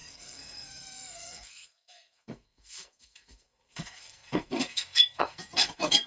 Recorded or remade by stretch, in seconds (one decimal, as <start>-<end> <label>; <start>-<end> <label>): 0.0-6.1 remade